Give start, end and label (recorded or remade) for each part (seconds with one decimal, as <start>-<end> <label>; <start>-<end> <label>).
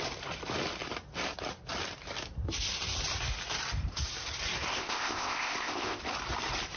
0.0-4.7 recorded; 4.7-6.0 remade; 6.0-6.8 recorded